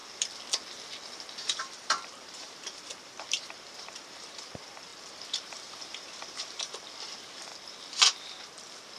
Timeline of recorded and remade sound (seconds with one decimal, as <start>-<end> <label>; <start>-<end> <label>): 0.0-1.6 recorded; 1.6-7.5 remade; 7.5-9.0 recorded